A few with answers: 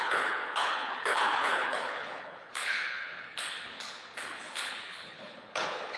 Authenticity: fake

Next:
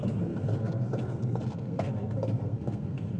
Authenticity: fake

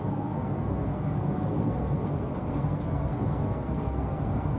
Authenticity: fake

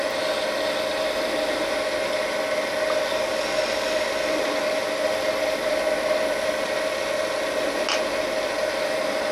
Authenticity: real